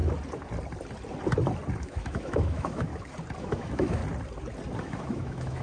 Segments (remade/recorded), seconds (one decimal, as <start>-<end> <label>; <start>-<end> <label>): 0.0-1.8 recorded; 1.8-2.9 remade; 2.9-3.4 recorded; 3.4-4.0 remade; 4.0-4.8 recorded; 4.8-5.6 remade

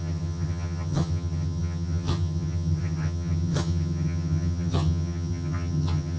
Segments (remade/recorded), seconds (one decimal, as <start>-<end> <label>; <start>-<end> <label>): 0.0-6.2 remade

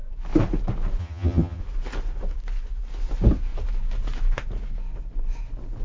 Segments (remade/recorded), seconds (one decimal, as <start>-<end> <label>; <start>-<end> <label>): 0.0-1.0 recorded; 1.0-1.6 remade; 1.6-5.8 recorded

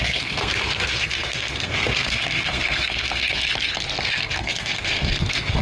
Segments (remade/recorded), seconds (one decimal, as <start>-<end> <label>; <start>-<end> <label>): 0.0-3.5 remade; 3.5-4.0 recorded; 4.0-5.6 remade

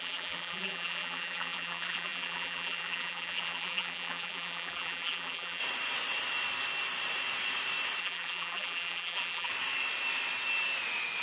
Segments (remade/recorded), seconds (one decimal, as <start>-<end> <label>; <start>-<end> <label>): 0.0-5.6 remade; 5.6-8.0 recorded; 8.0-9.5 remade; 9.5-11.2 recorded

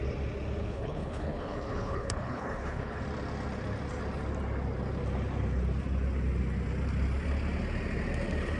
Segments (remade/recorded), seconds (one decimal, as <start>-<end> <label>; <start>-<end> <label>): 0.0-0.6 recorded; 0.6-3.0 remade; 3.0-8.6 recorded

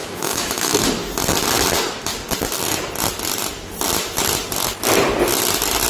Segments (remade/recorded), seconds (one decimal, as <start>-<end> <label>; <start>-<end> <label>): 0.0-0.9 remade; 0.9-5.9 recorded

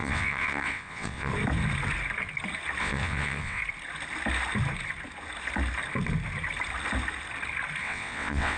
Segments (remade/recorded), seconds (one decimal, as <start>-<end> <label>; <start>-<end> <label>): 0.0-1.3 remade; 1.3-2.8 recorded; 2.8-3.6 remade; 3.6-7.8 recorded; 7.8-8.6 remade